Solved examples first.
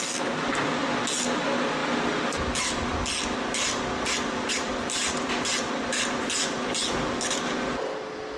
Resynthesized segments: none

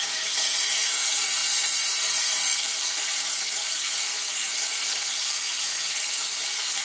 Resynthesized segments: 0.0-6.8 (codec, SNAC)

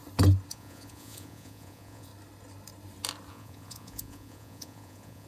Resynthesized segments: 0.5-2.1 (vocoder, Vocos); 3.3-5.3